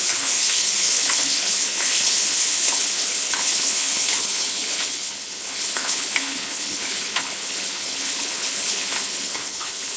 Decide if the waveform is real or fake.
fake